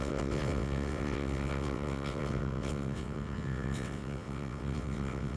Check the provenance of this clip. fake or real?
fake